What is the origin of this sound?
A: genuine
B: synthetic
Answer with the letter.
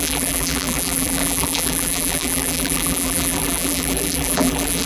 B